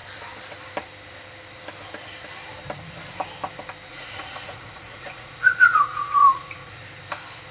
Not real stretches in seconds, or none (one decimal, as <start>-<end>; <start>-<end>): 3.9-6.8